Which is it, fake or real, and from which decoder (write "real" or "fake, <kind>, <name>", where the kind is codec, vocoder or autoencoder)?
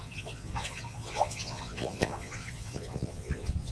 fake, vocoder, Vocos